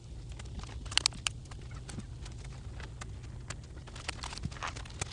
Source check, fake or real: real